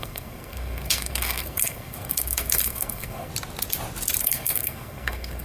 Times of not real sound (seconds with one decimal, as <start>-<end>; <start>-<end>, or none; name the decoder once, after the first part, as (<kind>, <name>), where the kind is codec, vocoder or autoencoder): 0.0-3.3 (codec, SNAC); 4.2-5.4